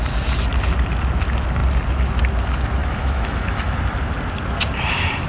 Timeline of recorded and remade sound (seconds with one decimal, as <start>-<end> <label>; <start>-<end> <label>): 0.0-2.8 recorded; 2.8-3.8 remade; 3.8-5.3 recorded